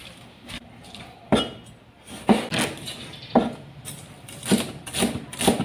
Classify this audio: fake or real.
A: real